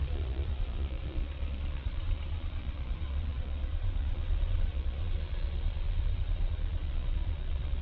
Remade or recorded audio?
remade